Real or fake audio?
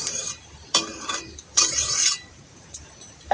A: fake